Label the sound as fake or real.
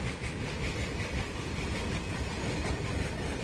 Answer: real